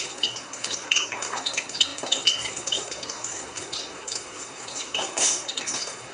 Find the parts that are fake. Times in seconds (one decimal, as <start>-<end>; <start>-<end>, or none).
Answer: 0.0-6.1